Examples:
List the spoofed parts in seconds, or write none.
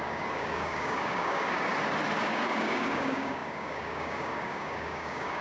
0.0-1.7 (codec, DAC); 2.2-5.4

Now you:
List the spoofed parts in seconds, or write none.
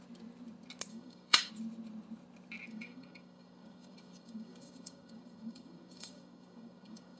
0.9-1.5 (codec, DAC); 2.7-7.2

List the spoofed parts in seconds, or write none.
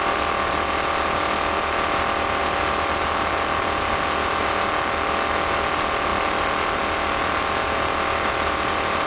none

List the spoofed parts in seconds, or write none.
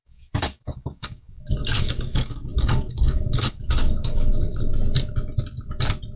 0.0-4.7 (codec, DAC)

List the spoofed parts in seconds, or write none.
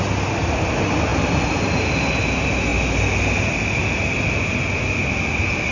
none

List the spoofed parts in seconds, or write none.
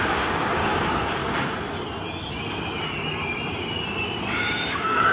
0.0-1.2 (codec, DAC); 4.3-5.1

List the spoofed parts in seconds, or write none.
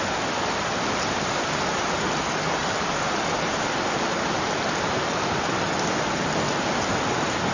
none